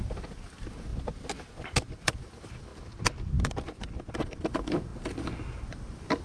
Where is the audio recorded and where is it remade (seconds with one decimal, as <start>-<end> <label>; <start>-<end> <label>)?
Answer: 0.0-0.9 remade; 0.9-2.2 recorded; 2.2-2.7 remade; 2.7-4.1 recorded; 4.1-4.9 remade; 4.9-5.7 recorded; 5.7-6.2 remade